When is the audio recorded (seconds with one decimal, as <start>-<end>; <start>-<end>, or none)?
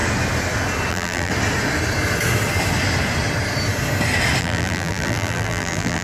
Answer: 0.0-0.9; 1.3-4.4